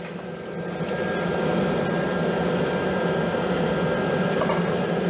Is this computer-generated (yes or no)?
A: no